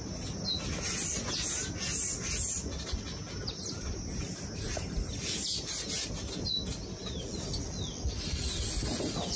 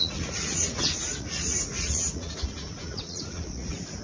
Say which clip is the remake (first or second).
second